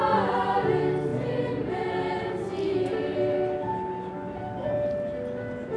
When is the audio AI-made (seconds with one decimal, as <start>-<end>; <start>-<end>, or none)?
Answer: none